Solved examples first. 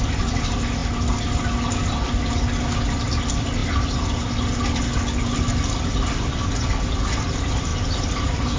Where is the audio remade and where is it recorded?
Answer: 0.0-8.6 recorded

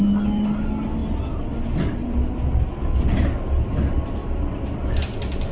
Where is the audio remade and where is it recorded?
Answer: 0.0-5.5 recorded

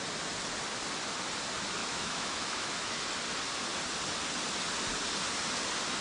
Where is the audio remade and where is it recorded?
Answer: 0.0-1.8 recorded; 1.8-3.1 remade; 3.1-6.0 recorded

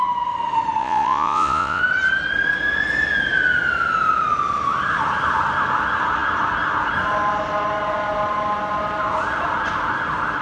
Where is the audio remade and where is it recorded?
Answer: 0.0-0.8 recorded; 0.8-1.8 remade; 1.8-10.4 recorded

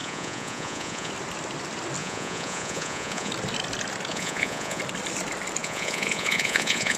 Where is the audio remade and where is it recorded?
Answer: 0.0-1.1 remade; 1.1-2.0 recorded; 2.0-3.3 remade; 3.3-4.1 recorded; 4.1-4.8 remade; 4.8-5.6 recorded; 5.6-7.0 remade

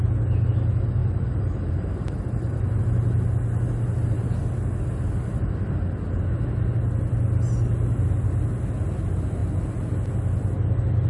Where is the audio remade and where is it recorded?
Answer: 0.0-1.0 recorded; 1.0-2.8 remade; 2.8-11.1 recorded

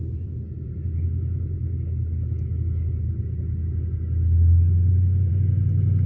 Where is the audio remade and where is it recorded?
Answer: 0.0-6.1 recorded